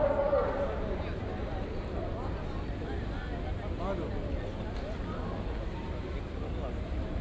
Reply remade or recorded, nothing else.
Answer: recorded